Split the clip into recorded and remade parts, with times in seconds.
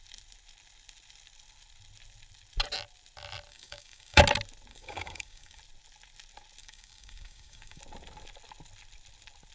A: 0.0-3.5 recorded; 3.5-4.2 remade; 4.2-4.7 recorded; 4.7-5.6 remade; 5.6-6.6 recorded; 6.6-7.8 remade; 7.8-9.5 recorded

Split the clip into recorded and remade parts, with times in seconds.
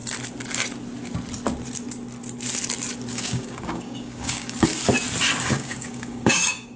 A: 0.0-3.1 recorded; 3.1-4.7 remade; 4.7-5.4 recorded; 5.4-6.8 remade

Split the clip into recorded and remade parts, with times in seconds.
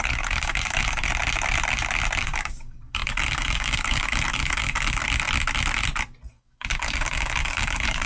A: 0.0-1.1 remade; 1.1-2.2 recorded; 2.2-5.0 remade; 5.0-6.3 recorded; 6.3-8.1 remade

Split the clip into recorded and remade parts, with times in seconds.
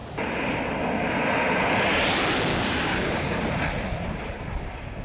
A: 0.0-2.5 recorded; 2.5-3.4 remade; 3.4-5.0 recorded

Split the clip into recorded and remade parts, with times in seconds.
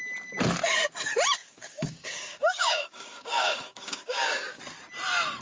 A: 0.0-1.4 recorded; 1.4-4.6 remade; 4.6-5.4 recorded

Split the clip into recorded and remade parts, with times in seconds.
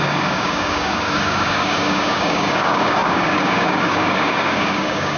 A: 0.0-5.2 remade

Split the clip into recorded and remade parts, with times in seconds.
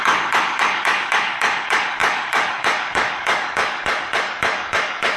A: 0.0-5.2 remade